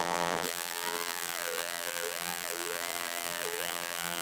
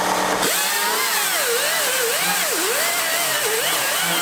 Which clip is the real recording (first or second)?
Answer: second